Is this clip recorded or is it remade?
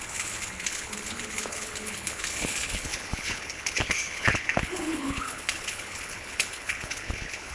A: remade